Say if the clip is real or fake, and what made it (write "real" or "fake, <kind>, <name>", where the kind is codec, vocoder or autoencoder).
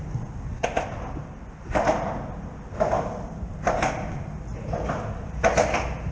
real